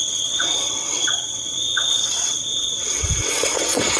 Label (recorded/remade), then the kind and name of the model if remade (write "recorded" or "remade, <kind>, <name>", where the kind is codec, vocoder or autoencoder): remade, vocoder, WaveNeXt